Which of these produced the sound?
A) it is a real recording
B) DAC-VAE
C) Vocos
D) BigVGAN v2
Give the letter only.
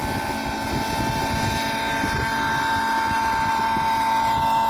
A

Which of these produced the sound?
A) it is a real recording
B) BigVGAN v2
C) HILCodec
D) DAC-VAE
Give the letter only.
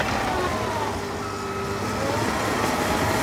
A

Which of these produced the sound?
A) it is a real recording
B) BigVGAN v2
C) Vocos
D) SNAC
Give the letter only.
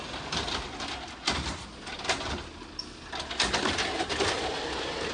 A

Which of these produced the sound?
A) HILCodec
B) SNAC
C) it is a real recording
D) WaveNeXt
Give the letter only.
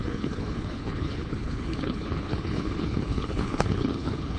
A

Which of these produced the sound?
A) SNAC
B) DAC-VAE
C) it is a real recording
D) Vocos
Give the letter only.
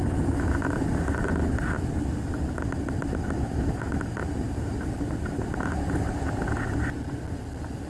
C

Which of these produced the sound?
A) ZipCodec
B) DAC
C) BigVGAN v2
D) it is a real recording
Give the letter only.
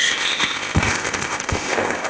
A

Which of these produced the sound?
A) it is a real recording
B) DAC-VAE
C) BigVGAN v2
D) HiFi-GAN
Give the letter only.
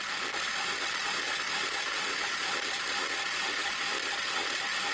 A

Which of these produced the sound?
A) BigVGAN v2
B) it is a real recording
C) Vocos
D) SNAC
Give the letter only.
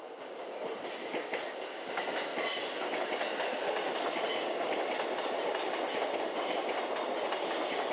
B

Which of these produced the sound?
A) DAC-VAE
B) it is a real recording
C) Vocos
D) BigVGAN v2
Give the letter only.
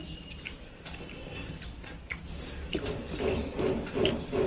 B